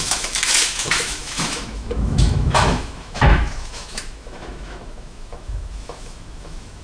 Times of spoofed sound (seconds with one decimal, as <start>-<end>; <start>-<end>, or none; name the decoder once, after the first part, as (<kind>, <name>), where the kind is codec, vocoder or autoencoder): 0.0-6.8 (autoencoder, DAC-VAE)